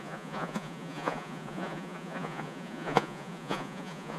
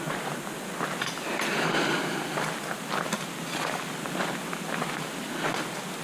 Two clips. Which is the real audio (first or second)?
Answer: second